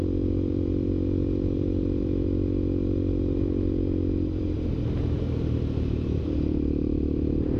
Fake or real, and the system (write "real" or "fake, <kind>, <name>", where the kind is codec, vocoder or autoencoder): fake, vocoder, BigVGAN v2